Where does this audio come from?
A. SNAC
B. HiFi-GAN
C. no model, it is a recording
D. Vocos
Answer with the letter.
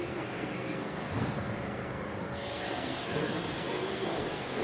A